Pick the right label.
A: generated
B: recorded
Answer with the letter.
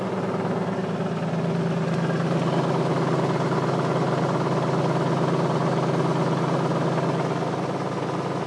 B